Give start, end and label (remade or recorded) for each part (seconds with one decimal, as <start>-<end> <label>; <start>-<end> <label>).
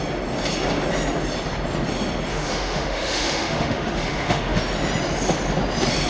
0.0-2.3 recorded; 2.3-4.6 remade; 4.6-6.1 recorded